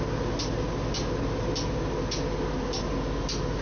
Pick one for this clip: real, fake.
real